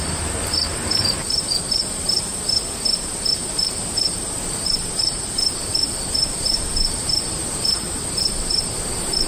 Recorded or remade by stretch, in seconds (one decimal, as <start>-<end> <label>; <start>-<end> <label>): 0.0-2.3 remade; 2.3-3.3 recorded; 3.3-9.3 remade